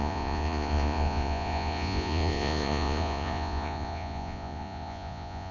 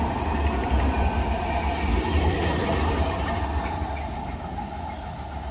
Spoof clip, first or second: first